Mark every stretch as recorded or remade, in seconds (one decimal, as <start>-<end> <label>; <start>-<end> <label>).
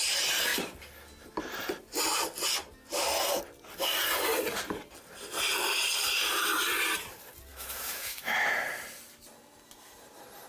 0.0-7.5 recorded; 7.5-8.5 remade; 8.5-10.5 recorded